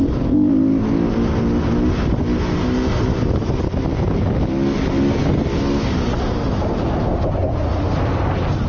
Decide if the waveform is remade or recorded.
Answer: recorded